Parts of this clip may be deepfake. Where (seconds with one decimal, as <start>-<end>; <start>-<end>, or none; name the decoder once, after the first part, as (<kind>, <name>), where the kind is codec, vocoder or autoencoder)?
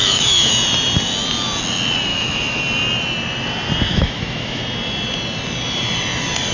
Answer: 0.0-0.5 (autoencoder, DAC-VAE); 2.1-2.6; 3.9-4.6